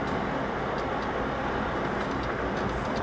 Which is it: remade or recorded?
recorded